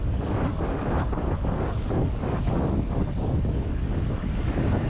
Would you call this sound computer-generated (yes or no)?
yes